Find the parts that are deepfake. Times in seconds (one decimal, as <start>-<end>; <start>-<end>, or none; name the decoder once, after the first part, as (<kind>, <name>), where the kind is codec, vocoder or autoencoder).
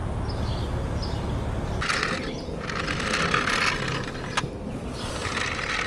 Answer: none